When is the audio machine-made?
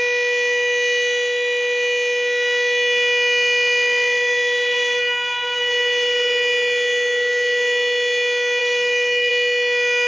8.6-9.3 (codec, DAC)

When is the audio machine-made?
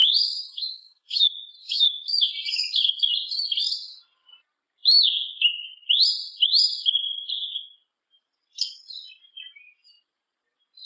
0.0-1.2 (codec, DAC); 1.6-2.3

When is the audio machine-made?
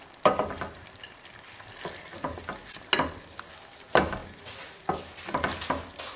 none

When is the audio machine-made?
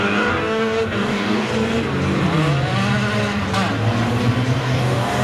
0.0-1.5 (codec, DAC); 4.6-5.2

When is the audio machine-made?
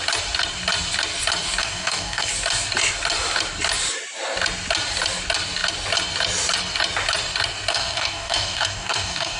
1.6-2.3 (codec, DAC); 7.7-9.4